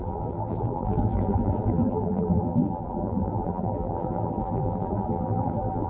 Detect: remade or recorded remade